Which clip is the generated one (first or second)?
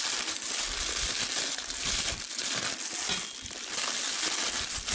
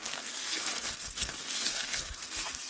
second